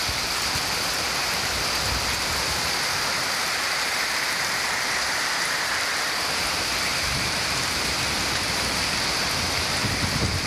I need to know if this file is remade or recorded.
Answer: remade